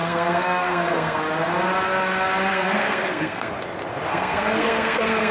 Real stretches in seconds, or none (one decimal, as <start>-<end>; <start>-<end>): 1.2-2.5; 3.5-4.1